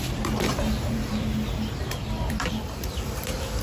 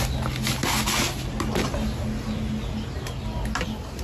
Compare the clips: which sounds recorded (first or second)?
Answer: second